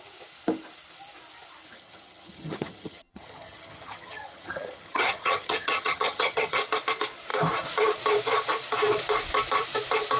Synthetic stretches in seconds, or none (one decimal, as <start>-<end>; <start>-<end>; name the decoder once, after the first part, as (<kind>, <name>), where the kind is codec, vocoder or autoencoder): 1.7-6.6 (vocoder, HiFi-GAN)